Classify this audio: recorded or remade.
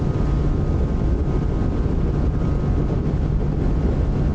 recorded